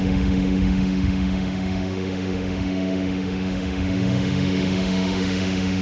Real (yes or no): no